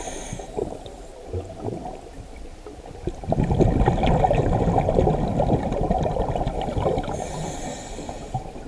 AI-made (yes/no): no